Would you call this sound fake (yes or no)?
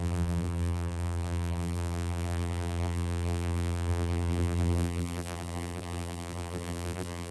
yes